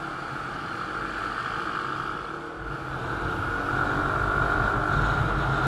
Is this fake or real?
real